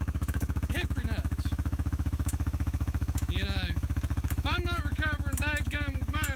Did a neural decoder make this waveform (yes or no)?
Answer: yes